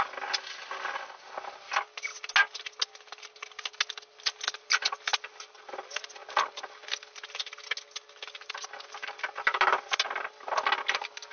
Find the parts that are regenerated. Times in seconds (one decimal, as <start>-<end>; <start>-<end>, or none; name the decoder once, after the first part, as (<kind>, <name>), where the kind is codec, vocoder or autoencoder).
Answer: none